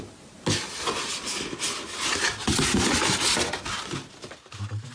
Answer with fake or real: real